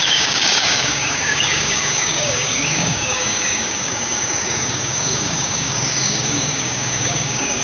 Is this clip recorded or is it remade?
remade